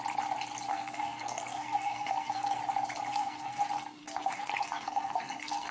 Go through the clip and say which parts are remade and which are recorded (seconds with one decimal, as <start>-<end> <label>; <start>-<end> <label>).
0.0-0.7 recorded; 0.7-2.6 remade; 2.6-3.1 recorded; 3.1-3.6 remade; 3.6-4.0 recorded; 4.0-5.7 remade